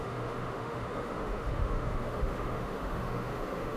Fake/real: fake